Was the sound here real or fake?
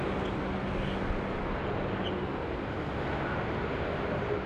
real